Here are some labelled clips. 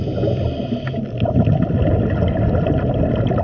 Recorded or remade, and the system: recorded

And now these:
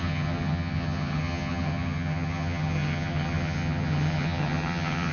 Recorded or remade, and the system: remade, vocoder, HiFi-GAN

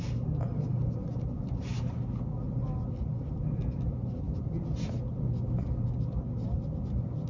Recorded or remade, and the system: recorded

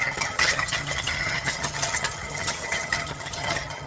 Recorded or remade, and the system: remade, vocoder, HiFi-GAN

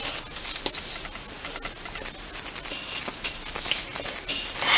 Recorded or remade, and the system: recorded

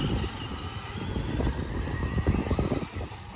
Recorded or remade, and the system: recorded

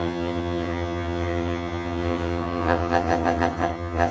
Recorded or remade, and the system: remade, vocoder, HiFi-GAN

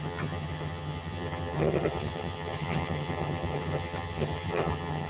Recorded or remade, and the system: remade, vocoder, HiFi-GAN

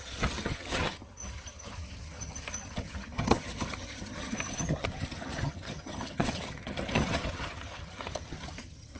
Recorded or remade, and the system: remade, vocoder, HiFi-GAN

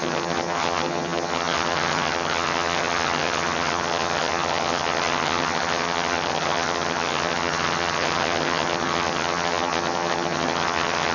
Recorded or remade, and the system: remade, vocoder, HiFi-GAN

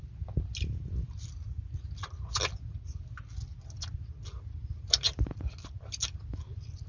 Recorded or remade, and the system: recorded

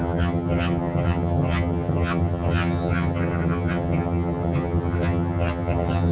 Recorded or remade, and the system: remade, vocoder, HiFi-GAN